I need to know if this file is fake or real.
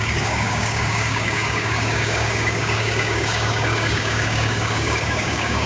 fake